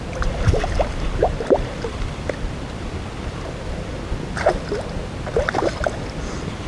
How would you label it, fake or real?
real